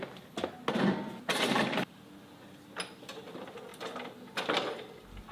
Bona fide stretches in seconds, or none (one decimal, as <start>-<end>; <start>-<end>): 0.0-5.3